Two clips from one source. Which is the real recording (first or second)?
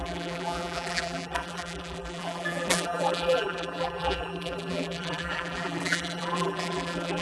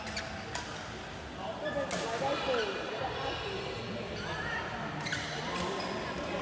second